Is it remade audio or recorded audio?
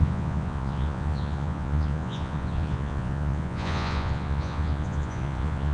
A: remade